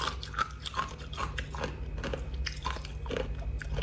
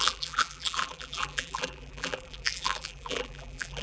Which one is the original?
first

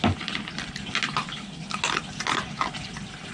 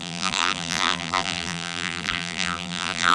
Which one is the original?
first